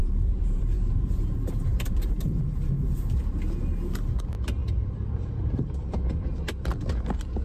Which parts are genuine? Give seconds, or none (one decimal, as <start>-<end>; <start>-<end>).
3.2-4.6; 5.8-7.4